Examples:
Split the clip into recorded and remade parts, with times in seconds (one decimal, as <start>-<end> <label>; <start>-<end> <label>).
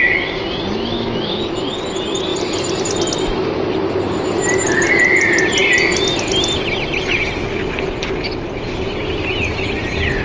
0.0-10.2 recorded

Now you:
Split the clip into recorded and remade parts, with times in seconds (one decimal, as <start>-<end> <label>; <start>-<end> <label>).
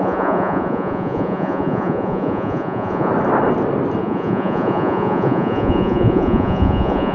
0.0-3.1 remade; 3.1-4.0 recorded; 4.0-7.1 remade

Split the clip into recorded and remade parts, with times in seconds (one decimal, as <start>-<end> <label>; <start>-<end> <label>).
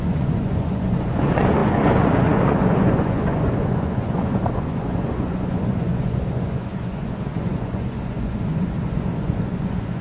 0.0-10.0 remade